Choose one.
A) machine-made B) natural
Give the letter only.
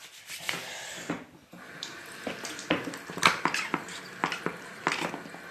B